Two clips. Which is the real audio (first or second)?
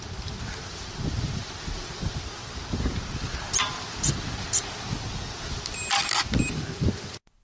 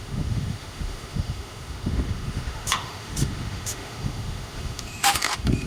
first